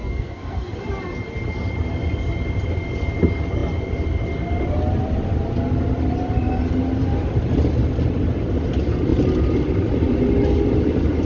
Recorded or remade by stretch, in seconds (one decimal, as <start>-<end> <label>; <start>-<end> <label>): 0.0-0.8 remade; 0.8-11.3 recorded